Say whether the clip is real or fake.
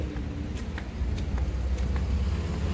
real